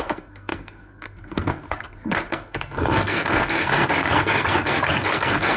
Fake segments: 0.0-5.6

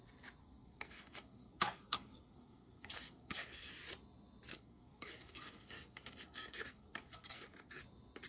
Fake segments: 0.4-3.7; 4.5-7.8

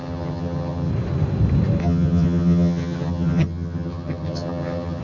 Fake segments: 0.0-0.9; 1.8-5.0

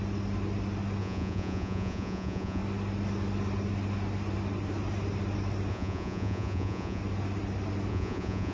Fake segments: 1.0-2.6; 5.7-7.0; 7.9-8.5

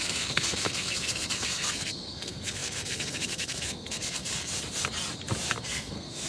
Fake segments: 0.0-4.5; 5.6-6.3